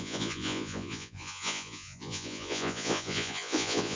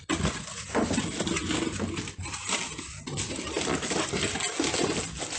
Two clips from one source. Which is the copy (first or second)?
first